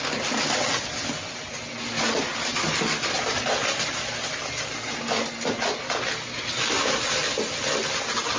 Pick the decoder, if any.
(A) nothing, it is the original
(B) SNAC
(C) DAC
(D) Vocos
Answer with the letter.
A